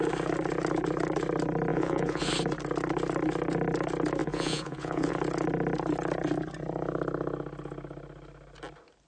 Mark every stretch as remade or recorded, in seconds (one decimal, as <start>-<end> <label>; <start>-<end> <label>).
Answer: 0.0-1.7 recorded; 1.7-2.3 remade; 2.3-4.2 recorded; 4.2-5.1 remade; 5.1-9.1 recorded